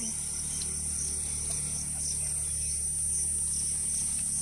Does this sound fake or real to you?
real